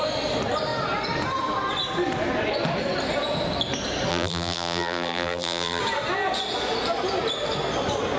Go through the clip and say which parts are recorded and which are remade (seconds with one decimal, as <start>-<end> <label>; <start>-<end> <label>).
0.0-4.1 recorded; 4.1-5.8 remade; 5.8-8.2 recorded